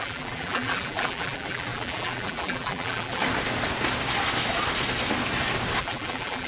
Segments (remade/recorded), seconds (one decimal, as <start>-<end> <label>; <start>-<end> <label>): 0.0-3.2 remade; 3.2-5.8 recorded; 5.8-6.5 remade